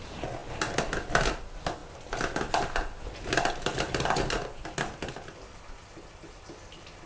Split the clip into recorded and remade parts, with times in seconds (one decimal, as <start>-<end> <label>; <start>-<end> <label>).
0.0-7.1 recorded